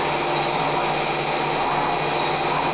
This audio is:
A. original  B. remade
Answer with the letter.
A